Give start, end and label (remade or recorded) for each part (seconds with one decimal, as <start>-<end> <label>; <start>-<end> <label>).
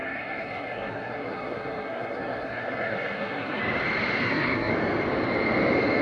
0.0-3.6 remade; 3.6-4.2 recorded; 4.2-4.7 remade; 4.7-6.0 recorded